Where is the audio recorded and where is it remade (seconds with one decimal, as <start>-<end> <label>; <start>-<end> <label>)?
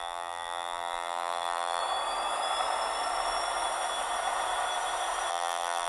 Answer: 0.0-1.8 remade; 1.8-5.3 recorded; 5.3-5.9 remade